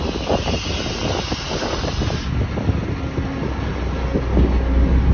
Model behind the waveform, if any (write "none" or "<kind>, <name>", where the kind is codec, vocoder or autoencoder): none